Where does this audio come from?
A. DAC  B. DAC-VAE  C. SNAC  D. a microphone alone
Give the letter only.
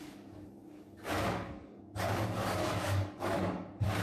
A